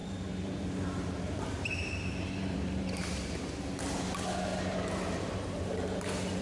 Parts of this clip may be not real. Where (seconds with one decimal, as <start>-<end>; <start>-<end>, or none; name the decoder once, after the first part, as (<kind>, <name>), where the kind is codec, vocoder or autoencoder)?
0.0-3.6 (vocoder, BigVGAN v2); 4.5-6.4